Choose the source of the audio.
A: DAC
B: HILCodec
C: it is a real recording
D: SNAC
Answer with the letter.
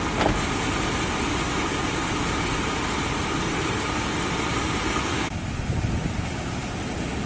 C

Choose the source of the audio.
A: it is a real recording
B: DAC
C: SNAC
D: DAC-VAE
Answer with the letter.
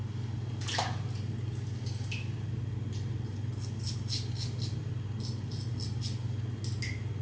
A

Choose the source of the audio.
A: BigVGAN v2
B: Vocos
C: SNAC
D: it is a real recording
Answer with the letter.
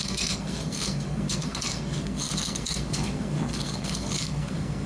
C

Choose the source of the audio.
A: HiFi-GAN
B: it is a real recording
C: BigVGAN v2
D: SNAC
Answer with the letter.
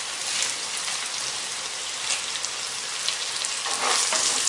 B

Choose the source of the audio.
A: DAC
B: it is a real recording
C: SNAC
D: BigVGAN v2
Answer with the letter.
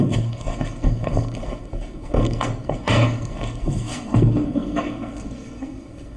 C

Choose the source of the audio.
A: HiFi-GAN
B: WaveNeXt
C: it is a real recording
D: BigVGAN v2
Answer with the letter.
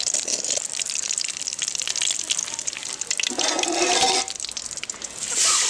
C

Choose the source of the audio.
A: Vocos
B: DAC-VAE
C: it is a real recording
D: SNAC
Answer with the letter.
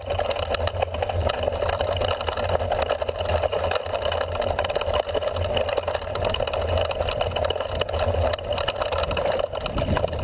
C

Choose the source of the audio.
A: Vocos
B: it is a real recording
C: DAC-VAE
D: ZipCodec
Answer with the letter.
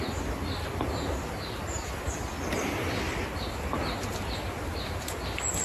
B